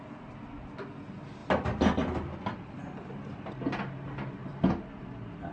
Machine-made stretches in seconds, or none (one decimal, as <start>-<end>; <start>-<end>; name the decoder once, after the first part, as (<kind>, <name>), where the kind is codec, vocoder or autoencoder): none